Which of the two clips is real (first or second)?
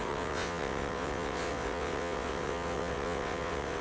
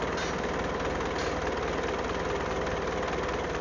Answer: second